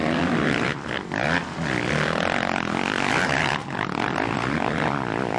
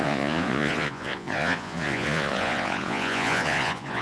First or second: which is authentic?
first